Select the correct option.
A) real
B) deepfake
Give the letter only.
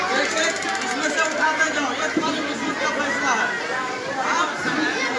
A